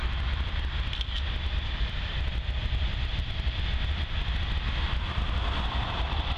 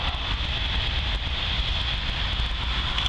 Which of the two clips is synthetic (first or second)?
first